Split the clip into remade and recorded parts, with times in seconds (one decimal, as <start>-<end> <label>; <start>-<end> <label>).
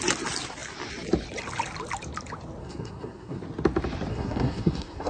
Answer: 0.0-2.6 recorded; 2.6-3.4 remade; 3.4-4.1 recorded; 4.1-5.1 remade